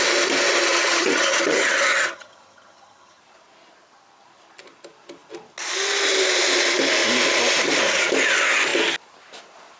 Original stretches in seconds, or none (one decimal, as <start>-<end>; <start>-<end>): 0.0-0.7; 3.2-9.8